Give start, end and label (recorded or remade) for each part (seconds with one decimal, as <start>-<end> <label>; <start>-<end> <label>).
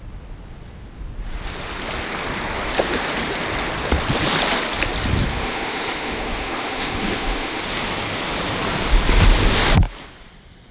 0.0-5.3 recorded; 5.3-7.6 remade; 7.6-10.7 recorded